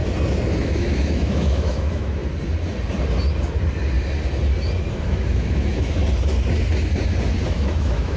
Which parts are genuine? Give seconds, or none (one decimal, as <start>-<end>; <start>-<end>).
0.0-0.6; 2.2-5.0; 6.0-7.5